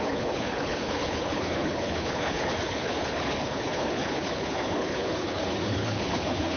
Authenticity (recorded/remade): remade